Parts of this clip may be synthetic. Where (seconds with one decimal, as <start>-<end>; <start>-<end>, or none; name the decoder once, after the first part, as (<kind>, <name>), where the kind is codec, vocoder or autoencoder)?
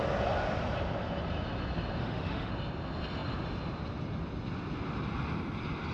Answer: 2.0-2.5 (autoencoder, DAC-VAE)